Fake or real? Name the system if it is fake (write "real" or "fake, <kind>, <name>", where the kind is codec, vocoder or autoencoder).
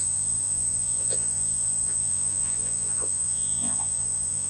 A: fake, vocoder, Vocos